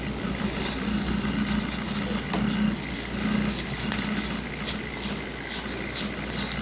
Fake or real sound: real